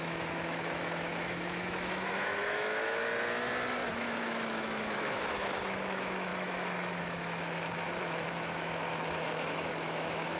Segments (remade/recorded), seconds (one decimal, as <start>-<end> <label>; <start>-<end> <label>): 0.0-3.1 remade; 3.1-3.9 recorded; 3.9-10.4 remade